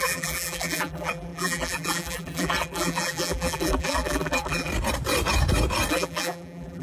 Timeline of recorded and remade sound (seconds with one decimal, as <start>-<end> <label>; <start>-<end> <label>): 0.0-4.7 remade; 4.7-5.9 recorded; 5.9-6.8 remade